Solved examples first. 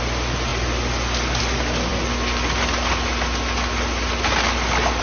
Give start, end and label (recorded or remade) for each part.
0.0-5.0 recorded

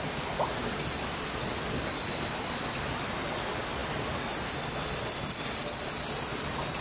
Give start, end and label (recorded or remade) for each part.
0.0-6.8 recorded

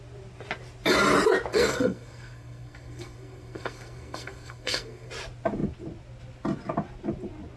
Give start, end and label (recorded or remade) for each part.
0.0-1.5 recorded; 1.5-5.1 remade; 5.1-7.6 recorded

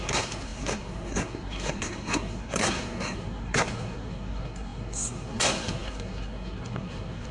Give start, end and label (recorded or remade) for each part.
0.0-7.3 remade